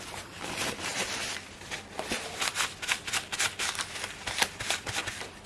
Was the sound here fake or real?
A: real